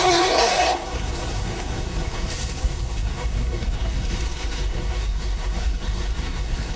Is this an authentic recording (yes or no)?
no